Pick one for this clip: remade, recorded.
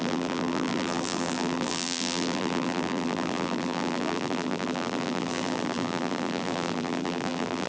remade